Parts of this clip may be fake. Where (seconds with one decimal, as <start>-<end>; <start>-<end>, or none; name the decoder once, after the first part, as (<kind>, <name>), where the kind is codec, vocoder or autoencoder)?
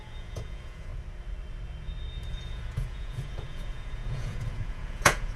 0.0-0.9 (vocoder, Vocos); 2.3-5.4